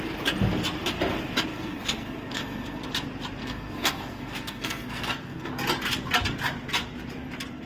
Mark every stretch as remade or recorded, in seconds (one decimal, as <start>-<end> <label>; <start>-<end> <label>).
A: 0.0-1.5 recorded; 1.5-2.9 remade; 2.9-3.4 recorded; 3.4-5.5 remade; 5.5-7.7 recorded